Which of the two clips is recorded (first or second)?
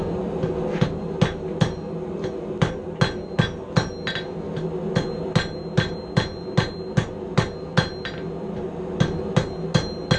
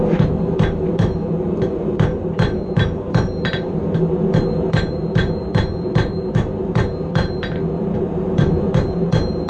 first